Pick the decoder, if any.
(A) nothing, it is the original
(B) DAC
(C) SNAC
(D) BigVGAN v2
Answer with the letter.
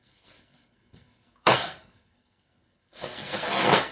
C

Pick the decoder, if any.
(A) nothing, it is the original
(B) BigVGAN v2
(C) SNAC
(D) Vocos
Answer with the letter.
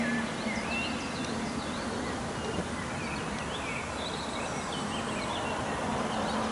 A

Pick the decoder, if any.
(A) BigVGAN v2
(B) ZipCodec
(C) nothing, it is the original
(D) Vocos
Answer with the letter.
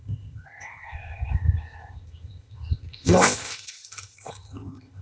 B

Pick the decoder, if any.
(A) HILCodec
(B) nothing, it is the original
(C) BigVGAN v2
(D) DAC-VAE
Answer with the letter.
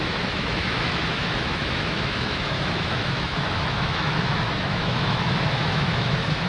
D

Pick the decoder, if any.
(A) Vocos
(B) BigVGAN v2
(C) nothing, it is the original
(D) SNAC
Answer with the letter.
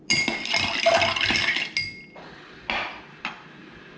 C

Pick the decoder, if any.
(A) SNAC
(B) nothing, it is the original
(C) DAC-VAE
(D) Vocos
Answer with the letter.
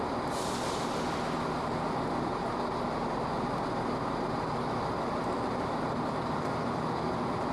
B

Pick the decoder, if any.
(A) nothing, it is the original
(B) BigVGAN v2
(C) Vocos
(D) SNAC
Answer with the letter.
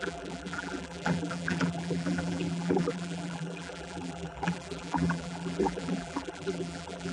B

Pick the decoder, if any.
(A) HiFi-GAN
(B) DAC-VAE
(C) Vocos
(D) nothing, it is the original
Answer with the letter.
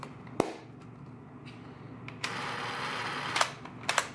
D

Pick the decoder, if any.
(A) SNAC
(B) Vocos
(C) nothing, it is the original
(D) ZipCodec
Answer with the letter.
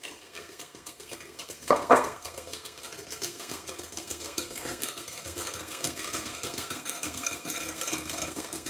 A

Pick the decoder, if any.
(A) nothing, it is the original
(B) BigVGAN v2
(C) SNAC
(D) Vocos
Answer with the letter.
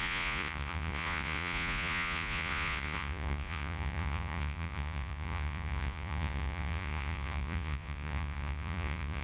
D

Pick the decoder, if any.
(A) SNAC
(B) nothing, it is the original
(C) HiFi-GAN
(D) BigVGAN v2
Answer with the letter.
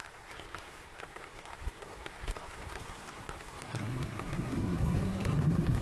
A